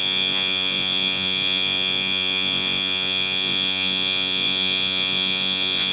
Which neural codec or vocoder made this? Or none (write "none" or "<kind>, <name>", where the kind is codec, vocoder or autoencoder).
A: vocoder, Vocos